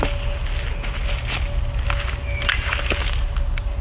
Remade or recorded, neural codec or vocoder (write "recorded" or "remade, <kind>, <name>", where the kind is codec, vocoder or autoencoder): recorded